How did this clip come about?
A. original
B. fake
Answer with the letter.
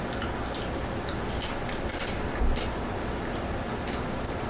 A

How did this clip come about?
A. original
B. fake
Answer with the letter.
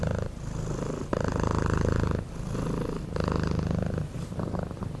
A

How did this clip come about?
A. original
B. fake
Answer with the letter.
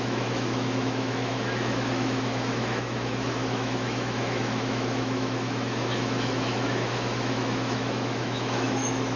B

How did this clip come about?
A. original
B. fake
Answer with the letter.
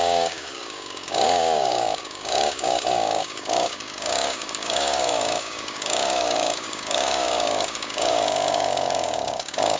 B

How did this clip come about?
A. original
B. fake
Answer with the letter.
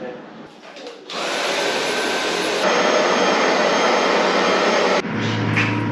A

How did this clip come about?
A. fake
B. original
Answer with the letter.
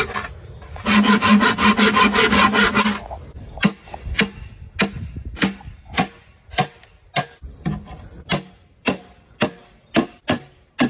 B